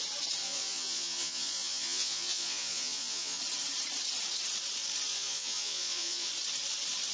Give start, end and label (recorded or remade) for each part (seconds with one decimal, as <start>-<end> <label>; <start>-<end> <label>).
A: 0.0-0.4 recorded; 0.4-3.4 remade; 3.4-5.1 recorded; 5.1-6.3 remade; 6.3-7.1 recorded